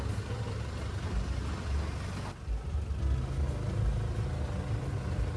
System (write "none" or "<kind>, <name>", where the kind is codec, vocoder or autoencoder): none